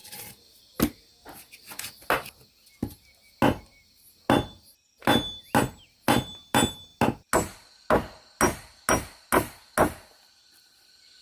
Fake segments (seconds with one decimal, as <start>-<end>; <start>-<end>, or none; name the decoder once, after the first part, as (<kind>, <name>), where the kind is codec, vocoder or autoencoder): none